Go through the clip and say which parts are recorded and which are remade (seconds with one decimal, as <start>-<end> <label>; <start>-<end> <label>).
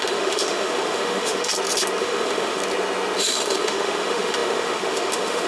0.0-1.5 remade; 1.5-2.0 recorded; 2.0-2.6 remade; 2.6-3.2 recorded; 3.2-5.5 remade